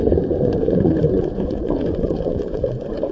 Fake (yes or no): yes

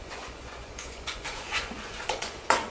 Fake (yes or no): yes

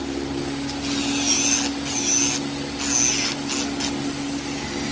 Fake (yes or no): no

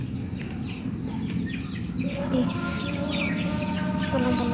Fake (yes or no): no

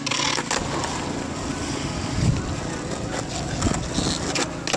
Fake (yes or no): no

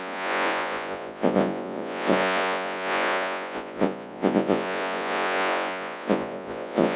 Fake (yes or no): yes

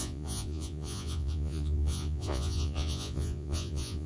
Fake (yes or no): yes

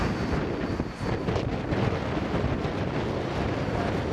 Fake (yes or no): no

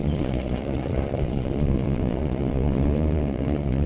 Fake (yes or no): yes